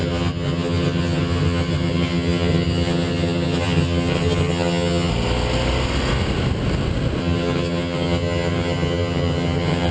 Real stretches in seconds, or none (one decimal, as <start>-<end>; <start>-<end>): 5.1-7.2